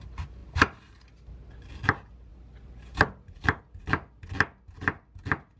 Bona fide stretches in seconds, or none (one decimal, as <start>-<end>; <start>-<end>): 0.0-0.4; 1.3-2.3; 3.6-5.6